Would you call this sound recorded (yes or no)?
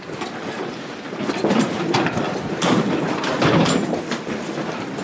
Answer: no